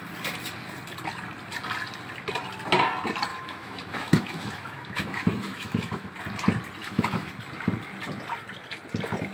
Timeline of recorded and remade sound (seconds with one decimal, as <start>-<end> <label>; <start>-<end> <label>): 0.0-3.3 recorded; 3.3-6.1 remade; 6.1-6.8 recorded; 6.8-7.3 remade; 7.3-9.3 recorded